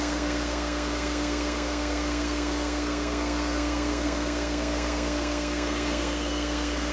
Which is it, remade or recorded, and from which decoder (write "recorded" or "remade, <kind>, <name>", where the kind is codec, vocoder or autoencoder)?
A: remade, codec, SNAC